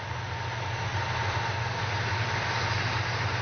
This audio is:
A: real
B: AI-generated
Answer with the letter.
A